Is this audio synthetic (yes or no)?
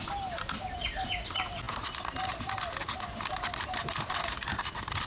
no